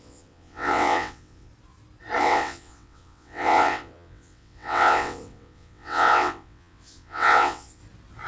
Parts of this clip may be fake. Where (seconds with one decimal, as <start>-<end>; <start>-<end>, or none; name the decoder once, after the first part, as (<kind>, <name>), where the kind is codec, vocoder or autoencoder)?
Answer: 0.0-1.5 (vocoder, WaveNeXt); 2.2-7.8